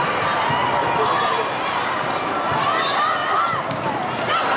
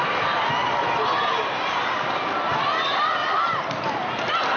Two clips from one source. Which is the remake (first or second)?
second